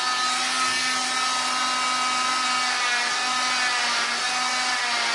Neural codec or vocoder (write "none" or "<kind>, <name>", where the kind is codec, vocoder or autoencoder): none